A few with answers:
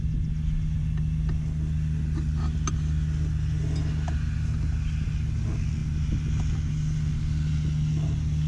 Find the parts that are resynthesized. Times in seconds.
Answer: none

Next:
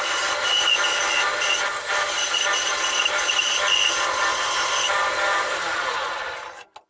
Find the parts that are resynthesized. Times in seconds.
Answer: none

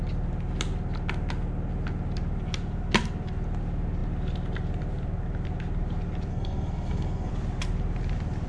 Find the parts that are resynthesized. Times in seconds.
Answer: 6.3-7.3 (codec, SNAC)

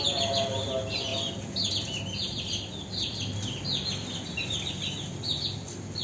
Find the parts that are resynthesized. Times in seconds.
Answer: none

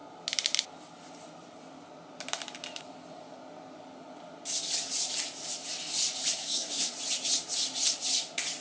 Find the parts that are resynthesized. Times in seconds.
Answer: 6.4-6.9 (codec, SNAC)

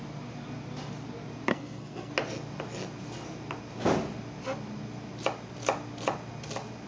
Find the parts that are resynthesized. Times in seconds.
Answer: 1.5-2.1 (codec, SNAC)